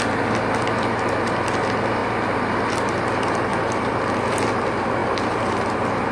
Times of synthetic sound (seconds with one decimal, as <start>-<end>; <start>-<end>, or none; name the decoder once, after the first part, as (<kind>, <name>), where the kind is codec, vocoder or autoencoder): 2.0-2.7 (vocoder, BigVGAN v2); 3.5-4.5